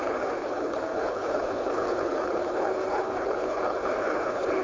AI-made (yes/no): yes